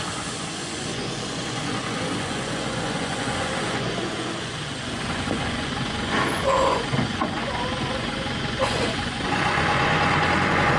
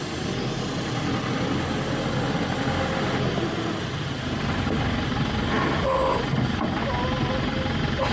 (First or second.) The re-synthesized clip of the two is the first